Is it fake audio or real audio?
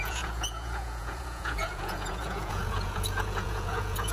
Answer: fake